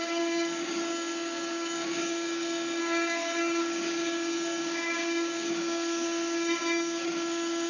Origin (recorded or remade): remade